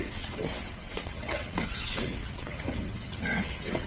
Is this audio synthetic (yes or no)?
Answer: yes